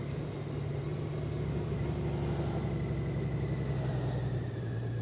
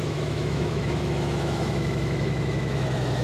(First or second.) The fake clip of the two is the second